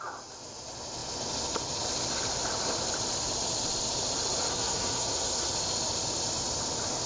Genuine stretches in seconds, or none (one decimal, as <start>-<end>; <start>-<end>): 0.0-4.5; 5.5-7.1